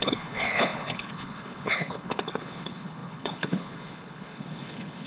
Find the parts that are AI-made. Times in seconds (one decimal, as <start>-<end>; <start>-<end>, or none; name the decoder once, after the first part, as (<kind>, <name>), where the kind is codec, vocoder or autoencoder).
0.0-5.1 (codec, HILCodec)